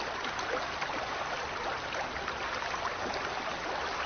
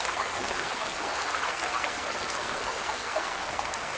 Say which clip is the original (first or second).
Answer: first